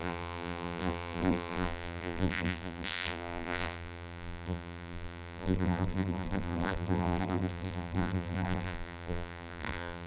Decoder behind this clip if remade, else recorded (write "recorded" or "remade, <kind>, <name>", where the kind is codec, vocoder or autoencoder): remade, vocoder, BigVGAN v2